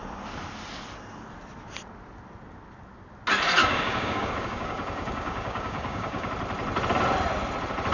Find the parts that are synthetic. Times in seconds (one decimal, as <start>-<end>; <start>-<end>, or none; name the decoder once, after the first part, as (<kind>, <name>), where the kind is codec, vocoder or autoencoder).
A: 3.6-6.3 (codec, DAC)